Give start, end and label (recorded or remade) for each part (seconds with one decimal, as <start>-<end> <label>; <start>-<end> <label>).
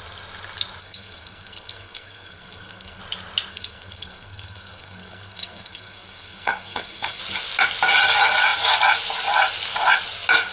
0.0-0.8 recorded; 0.8-3.0 remade; 3.0-3.5 recorded; 3.5-7.2 remade; 7.2-10.5 recorded